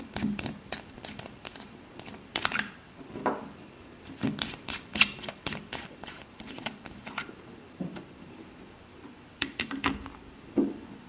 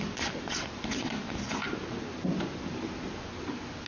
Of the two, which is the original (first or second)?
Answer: second